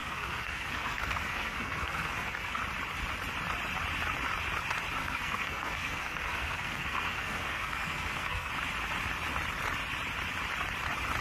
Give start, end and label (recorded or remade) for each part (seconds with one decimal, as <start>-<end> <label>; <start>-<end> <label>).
0.0-2.6 remade; 2.6-5.0 recorded; 5.0-8.5 remade; 8.5-11.2 recorded